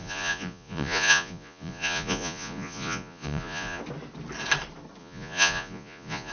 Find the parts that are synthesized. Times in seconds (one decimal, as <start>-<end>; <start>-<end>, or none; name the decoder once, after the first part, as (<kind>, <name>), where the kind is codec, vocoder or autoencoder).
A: 0.0-3.8 (vocoder, Vocos); 5.0-6.3